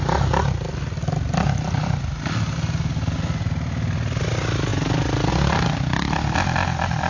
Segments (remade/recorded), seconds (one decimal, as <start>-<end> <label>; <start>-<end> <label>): 0.0-7.1 recorded